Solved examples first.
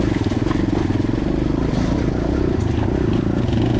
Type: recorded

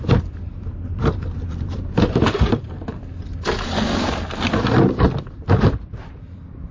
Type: remade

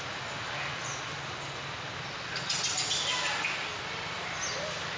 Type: recorded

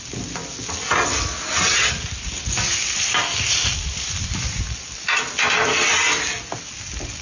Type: recorded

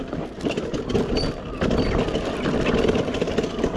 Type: recorded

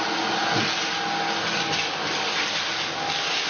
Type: recorded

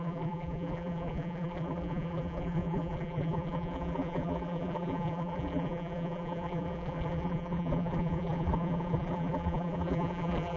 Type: remade